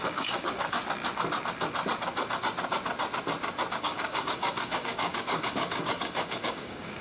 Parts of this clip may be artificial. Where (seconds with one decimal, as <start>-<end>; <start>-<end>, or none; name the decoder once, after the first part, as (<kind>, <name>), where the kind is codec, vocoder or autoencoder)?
0.0-0.8 (codec, DAC); 3.8-7.0